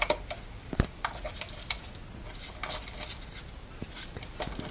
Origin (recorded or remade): recorded